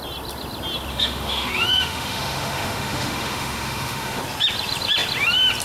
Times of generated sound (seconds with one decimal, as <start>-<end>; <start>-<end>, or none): 0.9-4.2